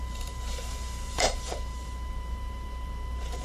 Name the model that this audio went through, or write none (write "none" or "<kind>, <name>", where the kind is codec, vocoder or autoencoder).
vocoder, BigVGAN v2